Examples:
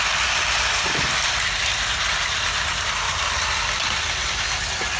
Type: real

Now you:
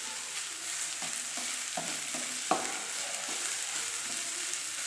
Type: real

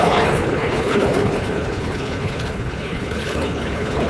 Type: fake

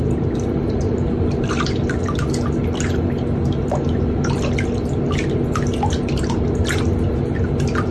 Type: real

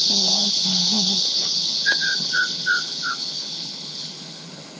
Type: fake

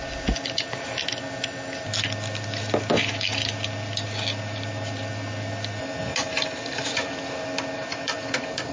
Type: real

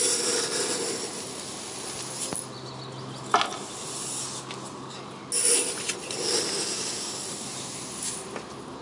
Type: real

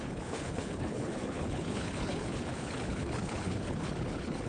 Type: fake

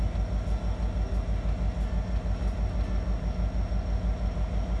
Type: real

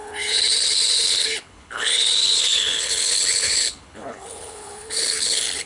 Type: fake